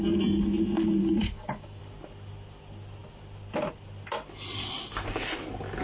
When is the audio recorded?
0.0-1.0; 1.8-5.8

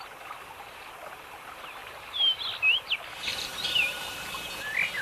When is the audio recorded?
0.0-1.8; 2.4-3.3; 4.4-5.0

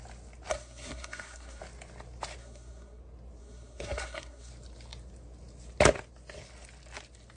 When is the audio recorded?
0.0-0.5; 1.6-2.4; 3.0-3.4; 4.5-7.4

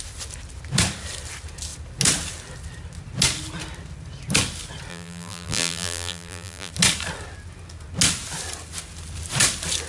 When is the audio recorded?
0.0-4.9; 6.7-9.9

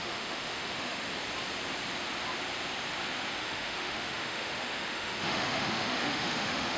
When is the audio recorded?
1.1-3.4

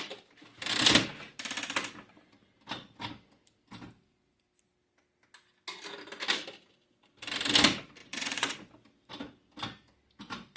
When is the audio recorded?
0.0-8.0; 8.7-10.6

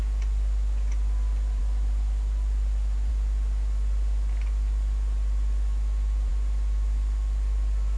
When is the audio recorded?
0.0-8.0